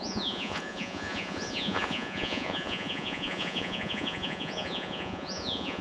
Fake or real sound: fake